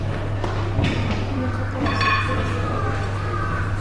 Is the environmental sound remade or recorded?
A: recorded